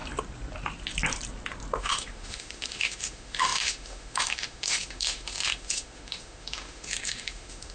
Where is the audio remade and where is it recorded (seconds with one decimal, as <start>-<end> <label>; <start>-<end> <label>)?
0.0-1.8 recorded; 1.8-7.7 remade